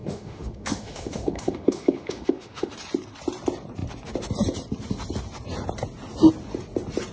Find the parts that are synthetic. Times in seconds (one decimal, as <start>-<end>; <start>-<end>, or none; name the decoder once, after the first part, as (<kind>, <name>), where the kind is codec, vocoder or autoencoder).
0.0-2.7 (autoencoder, DAC-VAE)